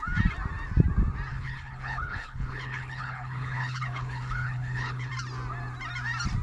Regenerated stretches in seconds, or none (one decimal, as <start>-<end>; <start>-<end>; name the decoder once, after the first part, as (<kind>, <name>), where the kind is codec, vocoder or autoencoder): 1.3-5.1 (codec, HILCodec)

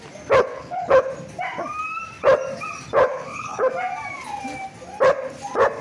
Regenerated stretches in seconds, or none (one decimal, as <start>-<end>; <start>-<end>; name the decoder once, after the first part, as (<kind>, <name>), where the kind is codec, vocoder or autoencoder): 0.5-1.1 (codec, HILCodec); 3.1-3.7

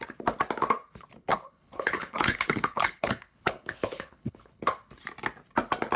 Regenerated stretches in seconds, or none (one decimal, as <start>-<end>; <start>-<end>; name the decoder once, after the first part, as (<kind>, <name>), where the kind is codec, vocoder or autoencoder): 1.3-4.6 (codec, HILCodec)

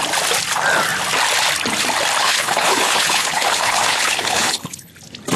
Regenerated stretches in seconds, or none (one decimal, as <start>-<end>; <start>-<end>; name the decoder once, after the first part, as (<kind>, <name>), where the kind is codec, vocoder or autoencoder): 2.2-4.9 (codec, HILCodec)